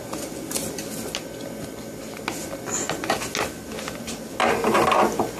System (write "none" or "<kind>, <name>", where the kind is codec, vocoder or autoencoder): none